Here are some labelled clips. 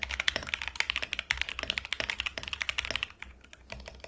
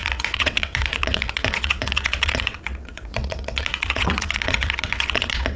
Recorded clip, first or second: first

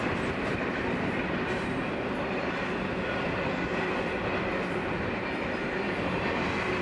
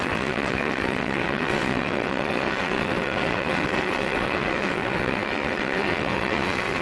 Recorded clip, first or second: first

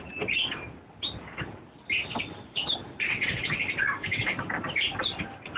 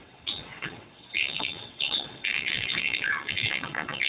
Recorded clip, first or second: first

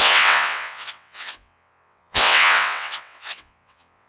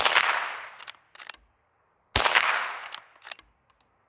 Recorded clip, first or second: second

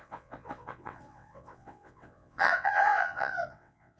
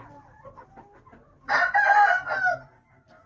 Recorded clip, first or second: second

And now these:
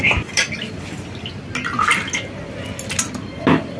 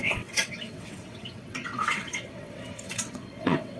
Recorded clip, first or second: first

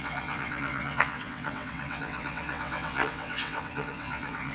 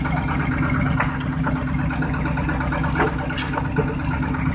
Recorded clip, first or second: second